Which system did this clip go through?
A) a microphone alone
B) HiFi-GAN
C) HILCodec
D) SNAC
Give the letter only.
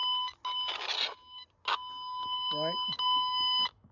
A